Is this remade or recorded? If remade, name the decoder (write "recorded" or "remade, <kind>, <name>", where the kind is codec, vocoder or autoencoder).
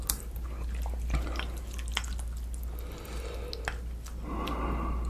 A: recorded